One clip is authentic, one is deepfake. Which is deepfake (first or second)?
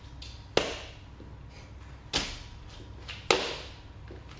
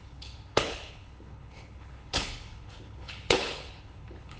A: second